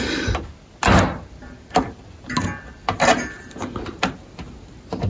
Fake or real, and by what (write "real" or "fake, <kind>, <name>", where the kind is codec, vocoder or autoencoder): real